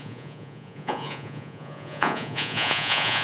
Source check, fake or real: fake